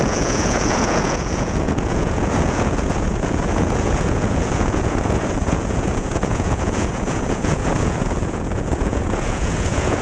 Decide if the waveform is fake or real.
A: fake